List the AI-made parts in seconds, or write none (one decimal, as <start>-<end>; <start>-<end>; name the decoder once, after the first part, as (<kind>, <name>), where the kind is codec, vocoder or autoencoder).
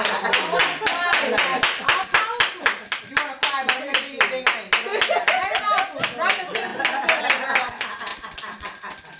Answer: none